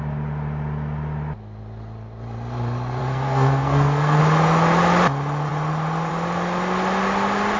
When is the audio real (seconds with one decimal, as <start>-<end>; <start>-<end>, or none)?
0.0-3.0; 4.2-7.6